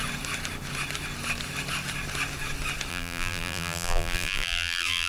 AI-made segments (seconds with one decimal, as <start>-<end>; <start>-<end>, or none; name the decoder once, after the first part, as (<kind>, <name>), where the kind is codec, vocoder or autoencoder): 2.9-5.1 (vocoder, BigVGAN v2)